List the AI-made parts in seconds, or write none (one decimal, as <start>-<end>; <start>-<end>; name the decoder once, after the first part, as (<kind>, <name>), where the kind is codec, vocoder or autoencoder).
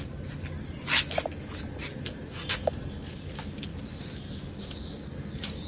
none